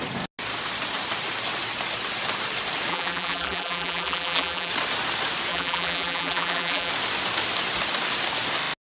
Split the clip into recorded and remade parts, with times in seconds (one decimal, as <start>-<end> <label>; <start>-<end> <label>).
0.0-2.9 recorded; 2.9-4.7 remade; 4.7-5.5 recorded; 5.5-6.9 remade; 6.9-8.9 recorded